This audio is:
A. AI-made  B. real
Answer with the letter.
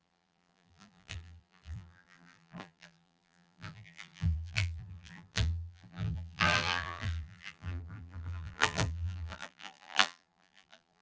A